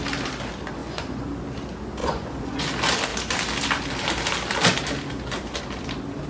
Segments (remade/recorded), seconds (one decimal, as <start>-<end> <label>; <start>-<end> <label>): 0.0-0.8 recorded; 0.8-1.3 remade; 1.3-2.0 recorded; 2.0-2.6 remade; 2.6-6.3 recorded